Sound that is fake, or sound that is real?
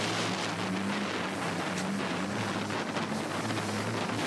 real